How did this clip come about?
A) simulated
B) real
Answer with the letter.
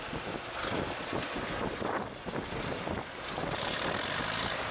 B